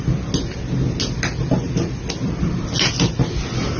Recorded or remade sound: recorded